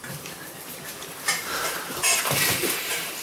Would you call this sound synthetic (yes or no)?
yes